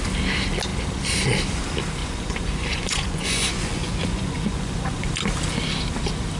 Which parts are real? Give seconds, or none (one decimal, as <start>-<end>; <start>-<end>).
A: 0.0-2.0; 5.1-6.4